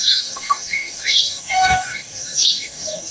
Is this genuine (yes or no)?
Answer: no